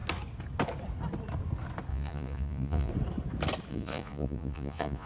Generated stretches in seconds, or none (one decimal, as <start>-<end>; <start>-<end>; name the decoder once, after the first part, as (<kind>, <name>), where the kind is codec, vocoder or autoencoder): 1.9-2.9 (vocoder, Vocos); 3.7-5.1